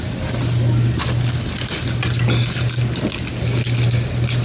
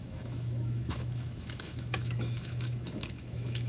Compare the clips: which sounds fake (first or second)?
second